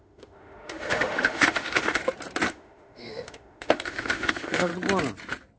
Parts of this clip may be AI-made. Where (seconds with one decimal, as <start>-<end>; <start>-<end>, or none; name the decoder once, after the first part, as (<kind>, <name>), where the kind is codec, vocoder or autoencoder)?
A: 0.0-2.0 (autoencoder, DAC-VAE); 2.5-4.7